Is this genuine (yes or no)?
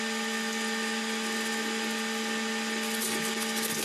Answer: yes